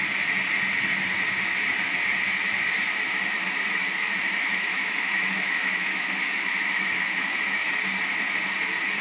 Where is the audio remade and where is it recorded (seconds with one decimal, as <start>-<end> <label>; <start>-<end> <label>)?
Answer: 0.0-4.4 recorded; 4.4-7.7 remade; 7.7-9.0 recorded